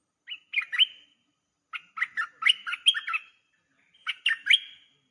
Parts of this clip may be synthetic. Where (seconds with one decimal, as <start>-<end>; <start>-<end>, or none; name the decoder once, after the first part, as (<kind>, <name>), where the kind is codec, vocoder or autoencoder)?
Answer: none